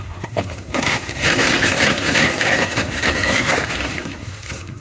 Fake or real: fake